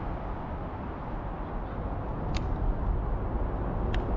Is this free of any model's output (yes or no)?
yes